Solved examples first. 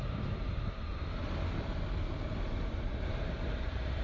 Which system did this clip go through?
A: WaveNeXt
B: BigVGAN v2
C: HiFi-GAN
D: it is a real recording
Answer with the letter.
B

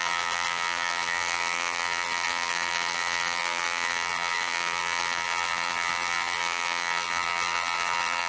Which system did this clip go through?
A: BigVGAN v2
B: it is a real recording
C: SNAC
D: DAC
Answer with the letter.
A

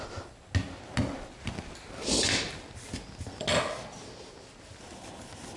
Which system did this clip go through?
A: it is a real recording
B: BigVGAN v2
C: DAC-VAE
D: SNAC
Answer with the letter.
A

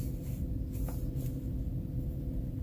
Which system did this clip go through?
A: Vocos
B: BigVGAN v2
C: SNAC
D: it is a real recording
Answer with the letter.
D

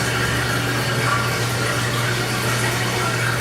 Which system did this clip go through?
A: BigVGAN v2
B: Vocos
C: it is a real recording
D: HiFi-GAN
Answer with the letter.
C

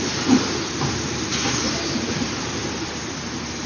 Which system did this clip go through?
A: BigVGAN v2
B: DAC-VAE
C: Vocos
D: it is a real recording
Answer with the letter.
A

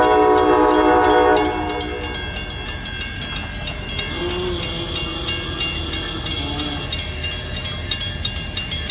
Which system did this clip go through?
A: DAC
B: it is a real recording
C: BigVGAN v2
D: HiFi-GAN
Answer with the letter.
B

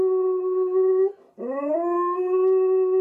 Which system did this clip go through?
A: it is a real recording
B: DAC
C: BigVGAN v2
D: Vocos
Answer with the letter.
A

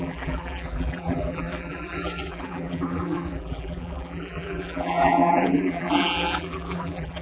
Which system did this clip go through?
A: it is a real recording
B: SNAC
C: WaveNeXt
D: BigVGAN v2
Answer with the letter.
D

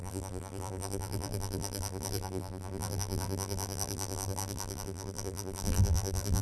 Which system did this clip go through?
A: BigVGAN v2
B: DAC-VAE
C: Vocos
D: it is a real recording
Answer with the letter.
A